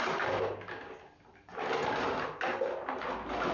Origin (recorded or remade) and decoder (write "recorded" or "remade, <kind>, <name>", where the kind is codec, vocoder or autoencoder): recorded